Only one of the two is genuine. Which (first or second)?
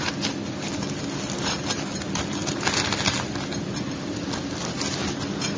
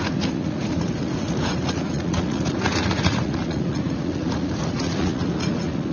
first